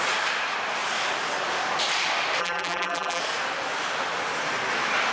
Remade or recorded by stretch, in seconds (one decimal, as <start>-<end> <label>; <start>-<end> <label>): 0.0-2.4 recorded; 2.4-3.2 remade; 3.2-5.1 recorded